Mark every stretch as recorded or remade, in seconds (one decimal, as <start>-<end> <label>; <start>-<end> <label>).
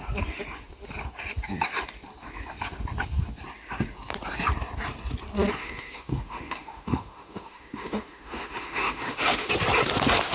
0.0-5.6 recorded; 5.6-9.5 remade; 9.5-10.3 recorded